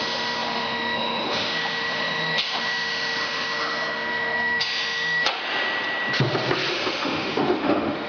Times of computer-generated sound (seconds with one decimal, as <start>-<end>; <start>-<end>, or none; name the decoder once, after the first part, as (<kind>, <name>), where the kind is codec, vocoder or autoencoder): 0.0-5.4 (autoencoder, DAC-VAE); 6.7-8.1